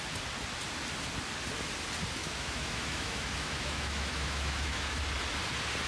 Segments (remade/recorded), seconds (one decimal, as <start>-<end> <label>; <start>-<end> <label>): 0.0-2.2 recorded; 2.2-5.0 remade; 5.0-5.9 recorded